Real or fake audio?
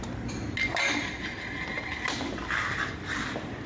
real